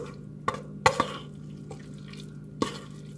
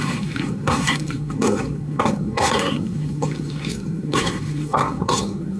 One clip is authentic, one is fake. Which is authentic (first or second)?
first